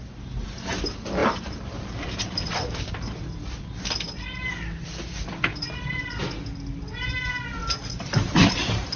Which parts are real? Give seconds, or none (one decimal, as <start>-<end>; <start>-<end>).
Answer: 0.0-1.2; 2.9-9.0